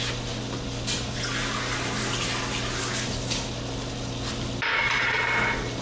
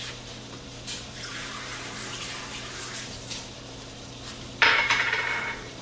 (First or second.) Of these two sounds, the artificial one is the second